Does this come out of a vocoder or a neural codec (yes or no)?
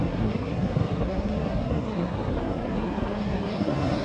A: yes